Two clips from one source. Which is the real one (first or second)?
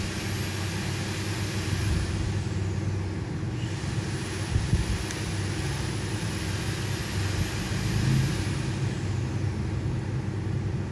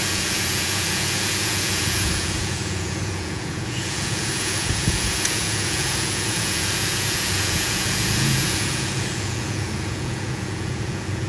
first